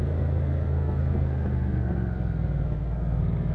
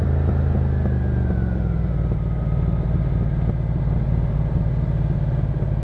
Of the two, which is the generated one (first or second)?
first